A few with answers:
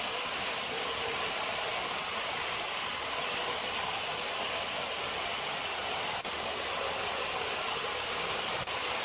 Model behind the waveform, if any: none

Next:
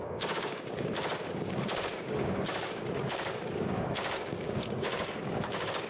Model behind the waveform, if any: codec, DAC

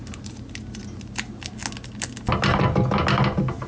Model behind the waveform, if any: none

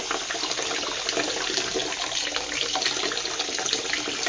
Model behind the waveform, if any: none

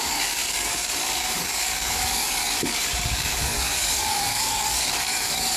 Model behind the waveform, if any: codec, DAC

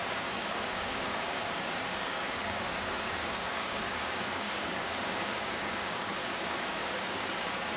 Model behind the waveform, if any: codec, DAC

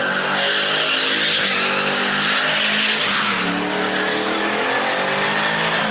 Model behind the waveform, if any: none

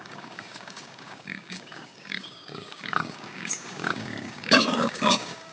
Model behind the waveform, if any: codec, DAC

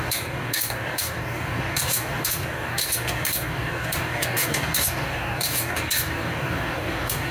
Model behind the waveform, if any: codec, DAC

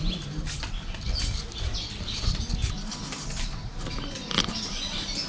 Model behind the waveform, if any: none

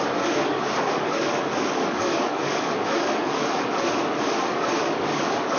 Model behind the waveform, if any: codec, DAC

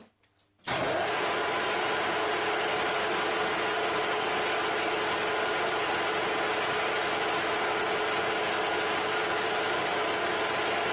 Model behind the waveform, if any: none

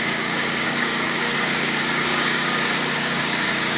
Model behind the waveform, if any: codec, DAC